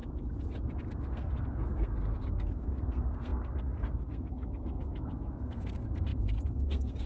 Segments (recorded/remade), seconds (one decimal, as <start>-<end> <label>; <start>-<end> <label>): 0.0-1.0 recorded; 1.0-7.1 remade